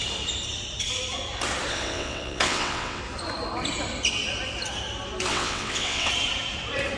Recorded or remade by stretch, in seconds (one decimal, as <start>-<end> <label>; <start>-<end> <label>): 0.0-1.7 recorded; 1.7-3.0 remade; 3.0-5.3 recorded; 5.3-6.1 remade; 6.1-7.0 recorded